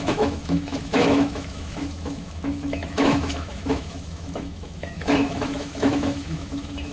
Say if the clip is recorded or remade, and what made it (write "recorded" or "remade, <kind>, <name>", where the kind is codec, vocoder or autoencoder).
remade, autoencoder, DAC-VAE